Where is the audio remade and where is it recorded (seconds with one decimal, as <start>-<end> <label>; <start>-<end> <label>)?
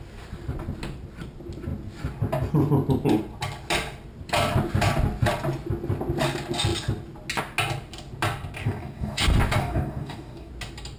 0.0-8.6 recorded; 8.6-9.2 remade; 9.2-9.6 recorded; 9.6-10.5 remade; 10.5-11.0 recorded